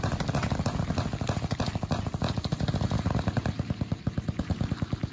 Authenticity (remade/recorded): recorded